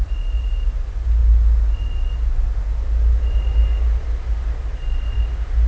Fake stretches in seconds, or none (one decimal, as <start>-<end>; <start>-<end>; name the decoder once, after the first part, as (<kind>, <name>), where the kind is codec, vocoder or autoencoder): none